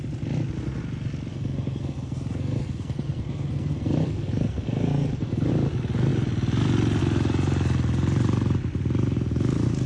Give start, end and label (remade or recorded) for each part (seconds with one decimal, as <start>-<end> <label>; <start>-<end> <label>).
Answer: 0.0-1.3 recorded; 1.3-5.5 remade; 5.5-9.9 recorded